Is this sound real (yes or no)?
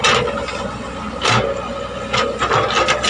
yes